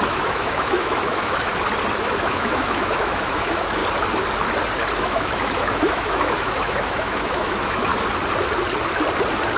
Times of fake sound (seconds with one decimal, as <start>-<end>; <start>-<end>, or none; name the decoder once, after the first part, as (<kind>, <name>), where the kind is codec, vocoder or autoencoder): 0.0-1.5 (autoencoder, DAC-VAE); 2.0-3.8; 5.0-7.9